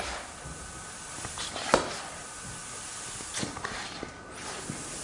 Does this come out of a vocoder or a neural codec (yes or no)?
no